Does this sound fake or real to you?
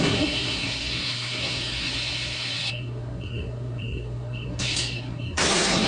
fake